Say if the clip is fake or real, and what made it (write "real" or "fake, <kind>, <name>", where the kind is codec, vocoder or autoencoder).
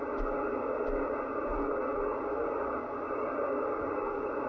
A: real